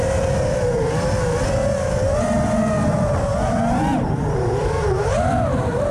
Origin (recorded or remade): remade